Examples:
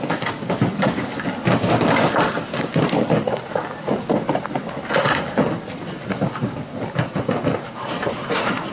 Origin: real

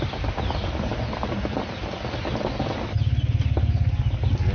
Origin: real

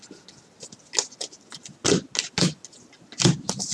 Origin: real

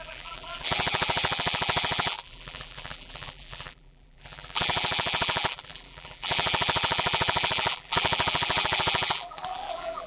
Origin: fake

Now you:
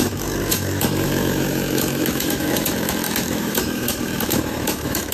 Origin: fake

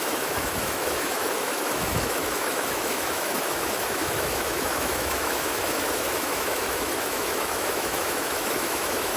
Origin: fake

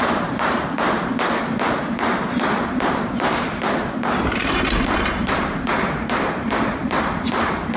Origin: fake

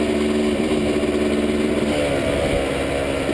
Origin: real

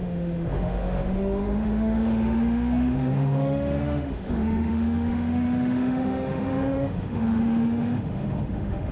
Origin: fake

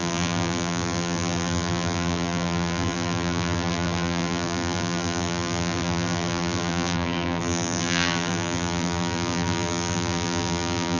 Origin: fake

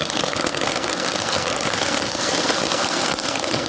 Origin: fake